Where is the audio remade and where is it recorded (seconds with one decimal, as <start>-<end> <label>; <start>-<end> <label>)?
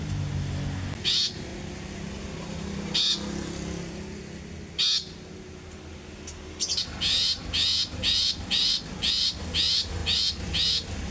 0.0-11.1 recorded